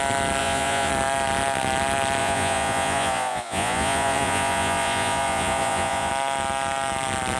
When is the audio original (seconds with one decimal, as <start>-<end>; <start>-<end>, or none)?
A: 0.0-0.4; 0.9-2.2; 6.1-7.4